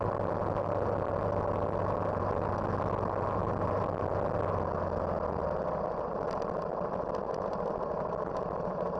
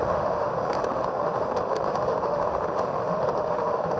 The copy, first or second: second